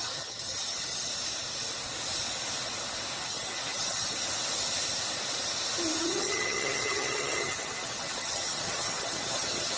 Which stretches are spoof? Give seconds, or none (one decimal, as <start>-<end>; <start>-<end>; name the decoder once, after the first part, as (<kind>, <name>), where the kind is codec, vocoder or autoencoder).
0.0-1.1 (vocoder, HiFi-GAN); 3.2-4.2; 6.0-9.8